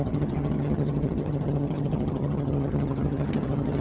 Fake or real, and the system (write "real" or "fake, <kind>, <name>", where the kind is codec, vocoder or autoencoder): fake, vocoder, HiFi-GAN